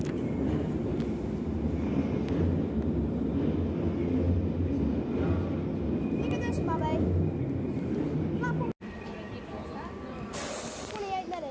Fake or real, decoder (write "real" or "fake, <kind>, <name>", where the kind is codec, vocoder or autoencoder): real